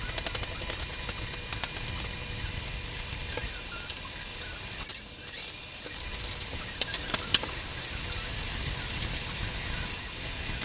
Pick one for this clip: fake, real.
real